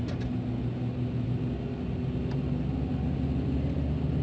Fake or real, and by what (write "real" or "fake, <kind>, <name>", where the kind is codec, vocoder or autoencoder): real